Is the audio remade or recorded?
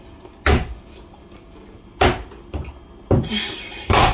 recorded